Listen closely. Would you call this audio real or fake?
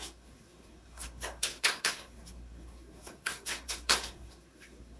fake